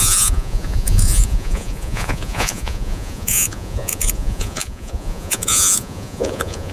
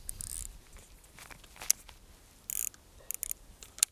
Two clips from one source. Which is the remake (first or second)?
first